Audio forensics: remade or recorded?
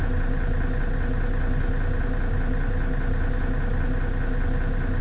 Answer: recorded